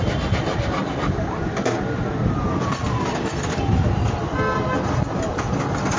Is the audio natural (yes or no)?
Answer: yes